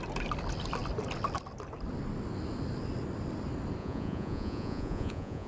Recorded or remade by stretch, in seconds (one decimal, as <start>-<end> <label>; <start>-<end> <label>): 0.0-3.8 recorded; 3.8-5.5 remade

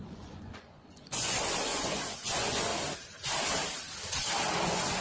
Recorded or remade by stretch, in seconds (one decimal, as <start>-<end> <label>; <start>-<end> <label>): 0.0-2.7 remade; 2.7-4.6 recorded; 4.6-5.0 remade

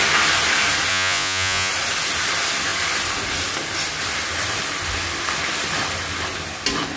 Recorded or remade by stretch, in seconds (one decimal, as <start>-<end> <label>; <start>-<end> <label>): 0.0-0.9 recorded; 0.9-1.7 remade; 1.7-7.0 recorded

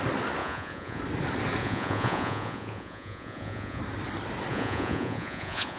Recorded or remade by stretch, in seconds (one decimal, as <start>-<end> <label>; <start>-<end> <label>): 0.0-0.4 recorded; 0.4-1.0 remade; 1.0-1.6 recorded; 1.6-3.8 remade; 3.8-4.5 recorded; 4.5-5.8 remade

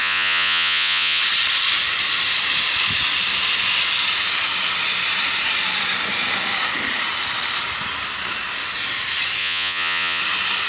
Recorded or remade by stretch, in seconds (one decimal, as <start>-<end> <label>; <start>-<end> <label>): 0.0-1.2 remade; 1.2-9.4 recorded; 9.4-10.2 remade; 10.2-10.7 recorded

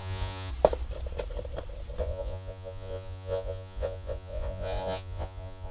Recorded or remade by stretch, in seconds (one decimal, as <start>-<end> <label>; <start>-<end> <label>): 0.0-0.5 remade; 0.5-2.0 recorded; 2.0-5.7 remade

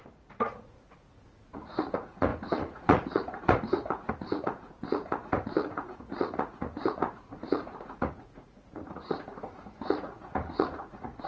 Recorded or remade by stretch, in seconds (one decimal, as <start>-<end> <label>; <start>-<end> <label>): 0.0-11.3 remade

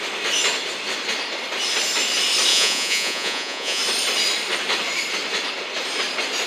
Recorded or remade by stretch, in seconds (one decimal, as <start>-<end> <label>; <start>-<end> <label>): 0.0-2.5 recorded; 2.5-3.8 remade; 3.8-6.5 recorded